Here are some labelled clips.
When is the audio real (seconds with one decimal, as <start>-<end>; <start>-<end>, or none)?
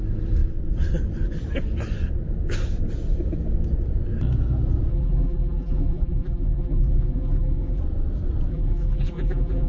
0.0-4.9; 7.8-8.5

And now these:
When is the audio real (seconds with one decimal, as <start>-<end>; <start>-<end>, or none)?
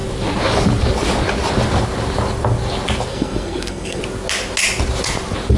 0.0-3.1; 4.0-5.6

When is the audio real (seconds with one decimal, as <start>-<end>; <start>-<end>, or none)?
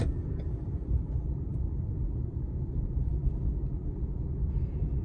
none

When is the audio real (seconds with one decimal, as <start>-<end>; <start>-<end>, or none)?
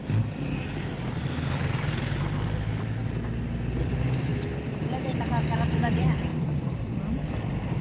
3.0-3.8; 4.3-5.7